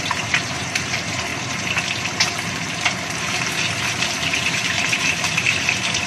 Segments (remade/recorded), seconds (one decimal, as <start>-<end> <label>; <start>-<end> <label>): 0.0-1.3 remade; 1.3-4.2 recorded; 4.2-6.1 remade